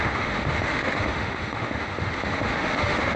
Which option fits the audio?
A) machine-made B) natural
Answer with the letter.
A